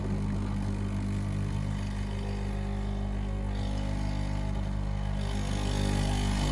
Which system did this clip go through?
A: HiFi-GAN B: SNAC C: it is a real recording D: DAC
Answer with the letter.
C